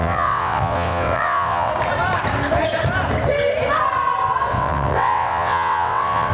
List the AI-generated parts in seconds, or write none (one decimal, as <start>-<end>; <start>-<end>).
0.0-1.7; 4.5-6.3